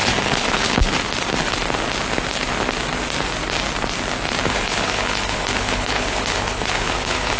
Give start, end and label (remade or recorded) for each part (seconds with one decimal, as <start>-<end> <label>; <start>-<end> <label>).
0.0-0.8 remade; 0.8-4.5 recorded; 4.5-7.4 remade